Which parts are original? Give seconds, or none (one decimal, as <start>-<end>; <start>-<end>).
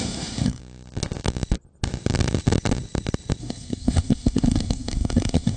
0.6-3.4